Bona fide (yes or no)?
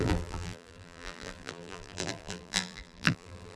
no